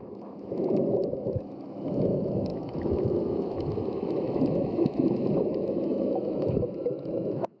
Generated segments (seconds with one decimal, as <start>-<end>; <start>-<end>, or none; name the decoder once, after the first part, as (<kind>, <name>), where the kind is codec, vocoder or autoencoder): 0.0-7.6 (autoencoder, DAC-VAE)